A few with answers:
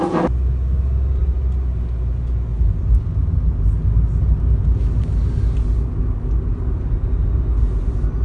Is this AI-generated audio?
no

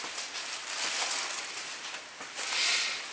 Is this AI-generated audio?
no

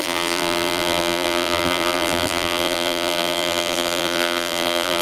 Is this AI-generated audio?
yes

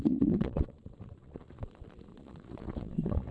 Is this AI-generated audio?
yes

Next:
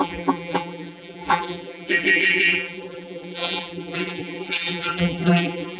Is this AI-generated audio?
yes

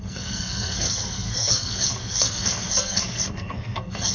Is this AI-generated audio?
yes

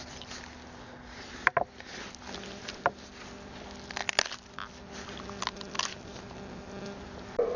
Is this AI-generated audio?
no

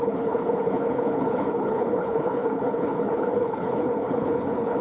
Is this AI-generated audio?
yes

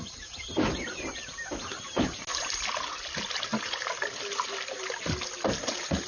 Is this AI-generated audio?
no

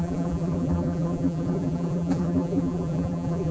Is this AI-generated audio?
yes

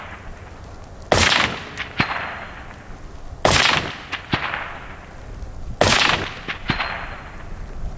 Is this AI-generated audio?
no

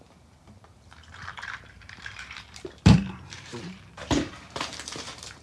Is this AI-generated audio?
yes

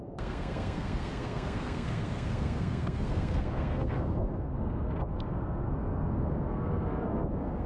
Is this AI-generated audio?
yes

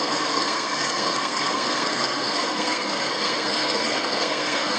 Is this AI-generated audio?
yes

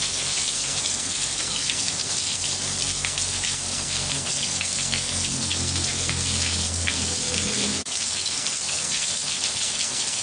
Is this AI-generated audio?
yes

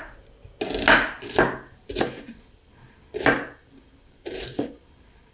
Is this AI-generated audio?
no